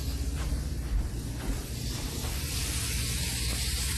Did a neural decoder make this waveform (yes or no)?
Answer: no